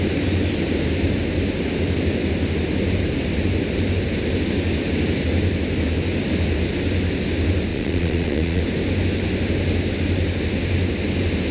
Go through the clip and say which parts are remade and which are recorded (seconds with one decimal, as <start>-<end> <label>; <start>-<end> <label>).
0.0-7.7 recorded; 7.7-8.6 remade; 8.6-11.5 recorded

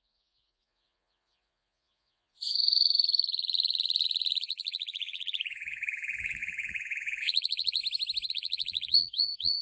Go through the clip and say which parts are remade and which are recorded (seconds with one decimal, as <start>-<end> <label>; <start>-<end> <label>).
0.0-7.8 remade; 7.8-8.3 recorded; 8.3-9.6 remade

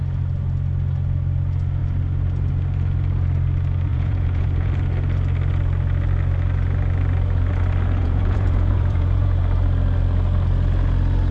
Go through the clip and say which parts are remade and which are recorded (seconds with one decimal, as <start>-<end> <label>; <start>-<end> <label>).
0.0-3.9 recorded; 3.9-4.7 remade; 4.7-8.0 recorded; 8.0-9.4 remade; 9.4-11.3 recorded

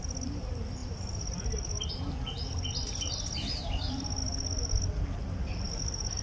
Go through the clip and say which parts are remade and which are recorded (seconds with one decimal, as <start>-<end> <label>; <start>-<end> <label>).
0.0-6.2 recorded

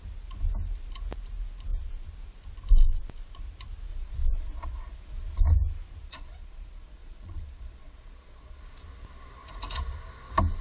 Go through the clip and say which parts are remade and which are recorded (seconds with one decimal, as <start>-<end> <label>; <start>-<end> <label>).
0.0-3.9 recorded; 3.9-5.4 remade; 5.4-6.0 recorded; 6.0-8.6 remade; 8.6-10.6 recorded

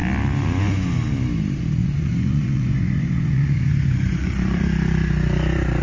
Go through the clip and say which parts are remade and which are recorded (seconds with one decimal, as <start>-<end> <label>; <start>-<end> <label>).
0.0-1.8 recorded; 1.8-4.6 remade; 4.6-5.8 recorded